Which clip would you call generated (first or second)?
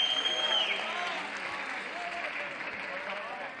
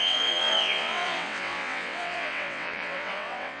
second